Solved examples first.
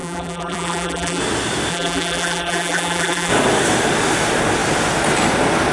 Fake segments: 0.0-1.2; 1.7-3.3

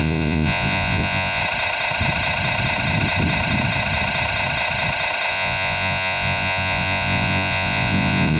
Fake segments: 0.0-1.4; 5.3-8.4